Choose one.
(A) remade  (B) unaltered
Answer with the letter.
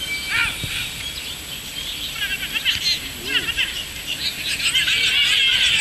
B